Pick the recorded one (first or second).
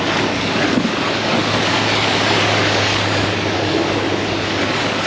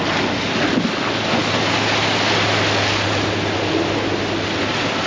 second